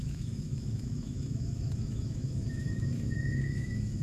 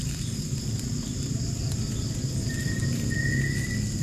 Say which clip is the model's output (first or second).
first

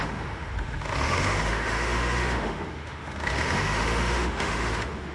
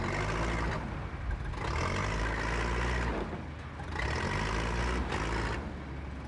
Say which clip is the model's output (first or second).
first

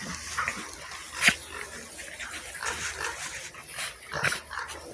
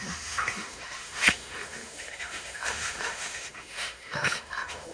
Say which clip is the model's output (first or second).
second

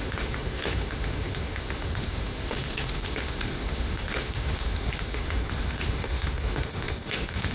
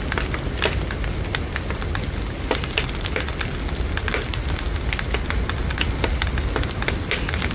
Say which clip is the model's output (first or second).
first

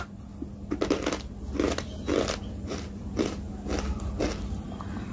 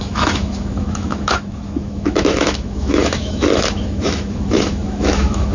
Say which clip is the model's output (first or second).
second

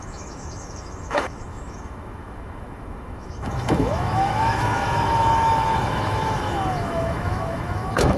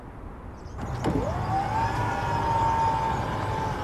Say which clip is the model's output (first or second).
first